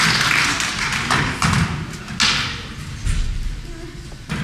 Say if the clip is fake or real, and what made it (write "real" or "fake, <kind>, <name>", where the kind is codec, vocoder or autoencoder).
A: real